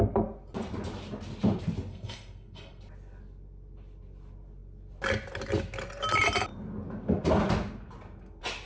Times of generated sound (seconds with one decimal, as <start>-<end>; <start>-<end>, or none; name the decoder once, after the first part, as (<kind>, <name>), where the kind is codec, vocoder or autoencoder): 1.9-2.8 (codec, SNAC)